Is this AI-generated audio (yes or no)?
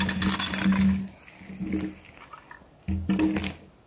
no